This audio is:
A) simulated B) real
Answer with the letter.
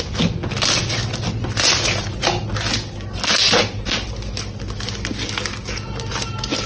B